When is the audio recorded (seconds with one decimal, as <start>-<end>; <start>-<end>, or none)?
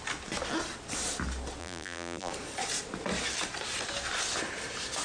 0.0-1.6; 2.3-5.0